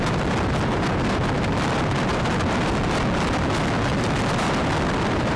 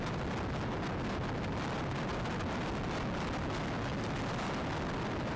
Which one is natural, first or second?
second